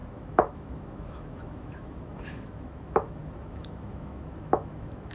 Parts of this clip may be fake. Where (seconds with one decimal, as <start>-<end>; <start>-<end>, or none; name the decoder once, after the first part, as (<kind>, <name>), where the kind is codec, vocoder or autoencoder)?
0.0-5.1 (autoencoder, DAC-VAE)